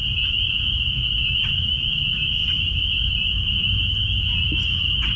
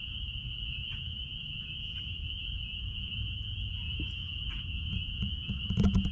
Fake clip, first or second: second